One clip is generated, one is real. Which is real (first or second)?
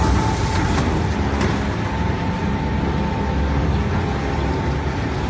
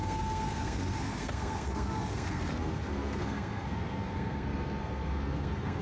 first